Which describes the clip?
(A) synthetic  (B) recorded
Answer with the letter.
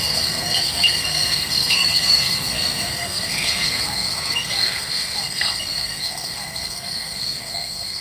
A